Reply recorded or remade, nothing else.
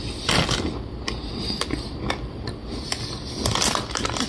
recorded